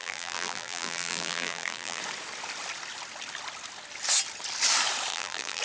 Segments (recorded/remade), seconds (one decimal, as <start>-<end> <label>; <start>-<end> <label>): 0.0-2.0 remade; 2.0-5.1 recorded; 5.1-5.6 remade